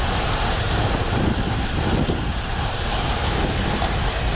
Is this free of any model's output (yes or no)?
no